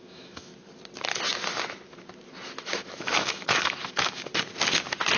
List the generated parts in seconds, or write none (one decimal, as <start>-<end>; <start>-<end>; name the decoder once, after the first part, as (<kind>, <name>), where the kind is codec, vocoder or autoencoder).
0.0-0.5 (autoencoder, DAC-VAE); 2.6-4.3